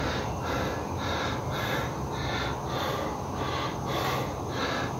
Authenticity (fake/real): real